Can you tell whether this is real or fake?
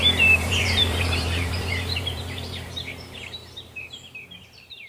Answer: fake